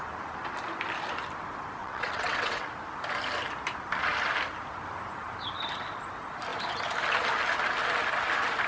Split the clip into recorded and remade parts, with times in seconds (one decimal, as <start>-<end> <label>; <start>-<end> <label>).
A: 0.0-1.8 recorded; 1.8-2.7 remade; 2.7-8.7 recorded